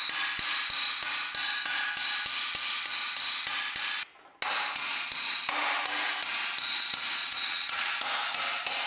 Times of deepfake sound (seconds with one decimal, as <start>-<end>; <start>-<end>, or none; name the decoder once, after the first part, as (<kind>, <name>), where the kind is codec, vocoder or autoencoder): 7.2-7.9 (vocoder, WaveNeXt)